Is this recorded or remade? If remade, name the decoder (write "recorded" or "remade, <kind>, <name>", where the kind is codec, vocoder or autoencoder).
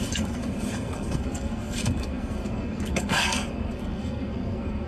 remade, codec, SNAC